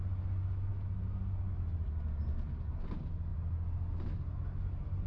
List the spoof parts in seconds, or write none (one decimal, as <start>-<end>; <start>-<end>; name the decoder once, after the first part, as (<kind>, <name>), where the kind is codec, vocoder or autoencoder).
none